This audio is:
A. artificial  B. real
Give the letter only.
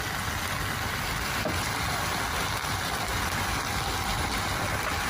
B